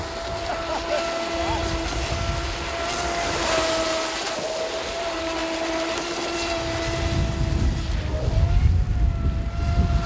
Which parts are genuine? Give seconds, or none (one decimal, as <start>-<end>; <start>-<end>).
0.0-10.1